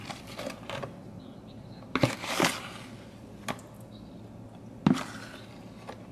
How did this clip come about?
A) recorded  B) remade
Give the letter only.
A